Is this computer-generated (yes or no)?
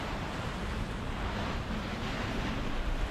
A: yes